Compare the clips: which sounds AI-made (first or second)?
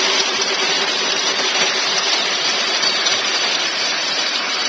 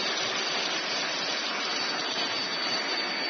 first